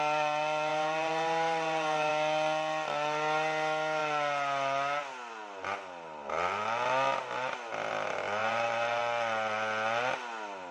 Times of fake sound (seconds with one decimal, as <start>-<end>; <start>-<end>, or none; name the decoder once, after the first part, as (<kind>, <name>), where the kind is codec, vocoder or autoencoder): 0.7-2.1 (vocoder, BigVGAN v2); 8.4-9.0